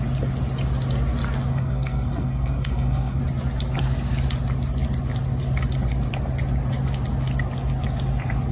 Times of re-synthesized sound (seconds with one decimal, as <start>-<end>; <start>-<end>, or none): 1.5-3.2

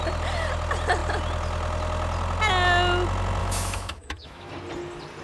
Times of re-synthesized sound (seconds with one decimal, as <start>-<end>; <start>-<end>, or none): 3.4-4.5

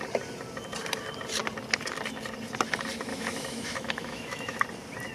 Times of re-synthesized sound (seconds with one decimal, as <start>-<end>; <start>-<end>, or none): 3.1-4.6